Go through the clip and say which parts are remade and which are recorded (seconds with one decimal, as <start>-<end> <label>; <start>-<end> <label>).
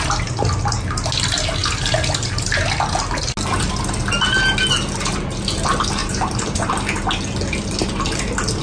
0.0-6.0 recorded; 6.0-6.7 remade; 6.7-8.6 recorded